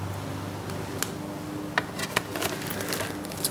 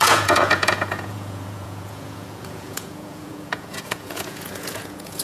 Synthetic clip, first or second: second